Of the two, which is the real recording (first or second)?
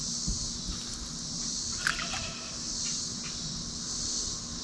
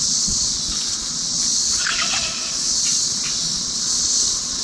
first